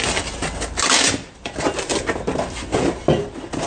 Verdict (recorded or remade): recorded